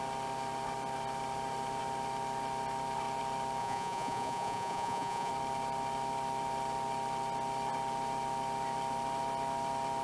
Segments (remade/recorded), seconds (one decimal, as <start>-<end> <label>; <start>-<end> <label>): 0.0-3.6 recorded; 3.6-5.3 remade; 5.3-10.0 recorded